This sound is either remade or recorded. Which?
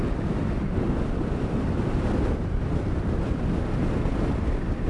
recorded